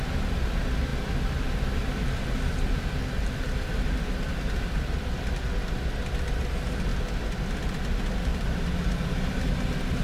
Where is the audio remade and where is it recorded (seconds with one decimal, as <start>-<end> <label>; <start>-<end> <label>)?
0.0-8.3 recorded; 8.3-9.4 remade; 9.4-10.0 recorded